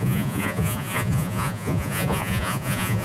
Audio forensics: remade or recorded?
remade